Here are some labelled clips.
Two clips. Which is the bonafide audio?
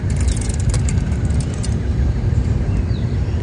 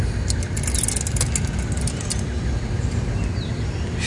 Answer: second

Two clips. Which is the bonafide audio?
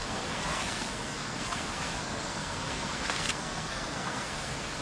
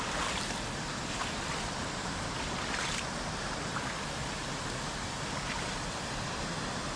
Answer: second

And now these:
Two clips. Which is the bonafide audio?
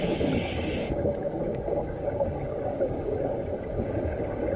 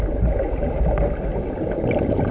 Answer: second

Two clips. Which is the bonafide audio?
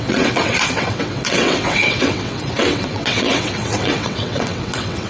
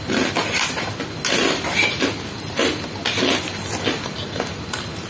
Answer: second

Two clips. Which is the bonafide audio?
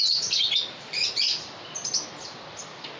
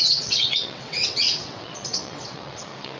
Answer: first